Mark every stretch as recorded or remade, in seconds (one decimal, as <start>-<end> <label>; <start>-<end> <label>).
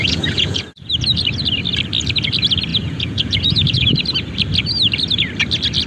0.0-0.9 remade; 0.9-2.7 recorded; 2.7-4.0 remade; 4.0-5.9 recorded